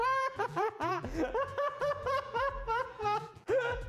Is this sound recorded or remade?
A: remade